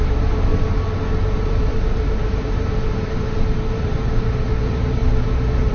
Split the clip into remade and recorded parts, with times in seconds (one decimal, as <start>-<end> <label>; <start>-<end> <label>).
0.0-0.5 remade; 0.5-1.4 recorded; 1.4-5.7 remade